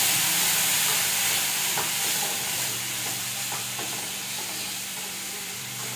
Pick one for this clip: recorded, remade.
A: remade